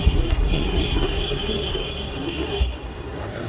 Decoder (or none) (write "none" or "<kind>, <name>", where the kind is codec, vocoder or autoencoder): codec, SNAC